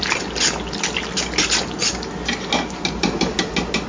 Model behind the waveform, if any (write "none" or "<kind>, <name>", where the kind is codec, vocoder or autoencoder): none